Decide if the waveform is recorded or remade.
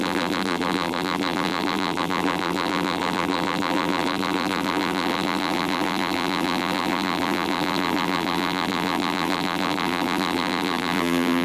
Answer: remade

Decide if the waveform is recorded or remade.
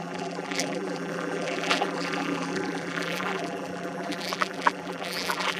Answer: remade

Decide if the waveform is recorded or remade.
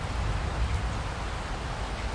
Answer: recorded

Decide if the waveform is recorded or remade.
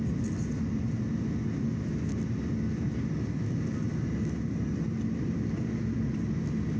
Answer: recorded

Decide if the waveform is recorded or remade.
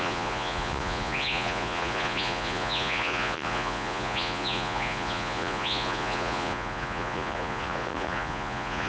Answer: remade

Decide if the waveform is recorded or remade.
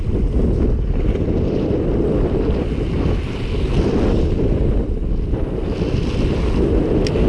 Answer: recorded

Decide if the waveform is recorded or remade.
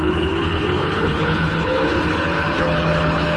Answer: remade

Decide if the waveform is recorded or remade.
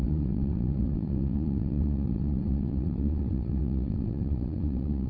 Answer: remade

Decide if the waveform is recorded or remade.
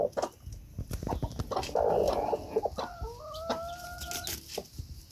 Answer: recorded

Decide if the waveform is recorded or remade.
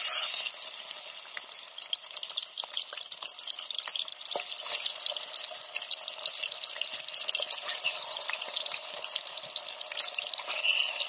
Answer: recorded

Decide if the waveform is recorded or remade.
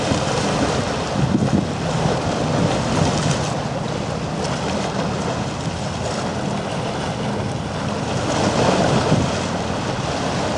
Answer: recorded